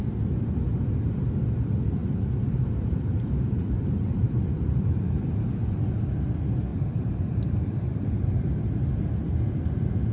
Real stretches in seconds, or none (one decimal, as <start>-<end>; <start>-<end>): 0.0-2.0; 5.5-6.7; 8.5-10.1

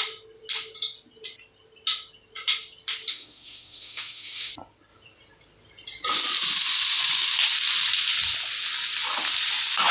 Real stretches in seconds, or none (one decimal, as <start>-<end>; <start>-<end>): 0.0-3.1; 4.5-9.9

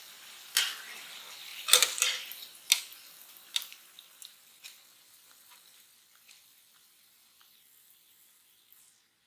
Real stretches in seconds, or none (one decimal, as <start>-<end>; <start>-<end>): 0.0-9.3